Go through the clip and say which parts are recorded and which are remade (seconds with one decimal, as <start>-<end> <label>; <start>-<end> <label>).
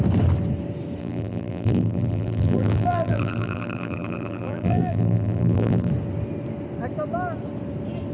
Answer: 0.0-1.0 recorded; 1.0-5.9 remade; 5.9-8.1 recorded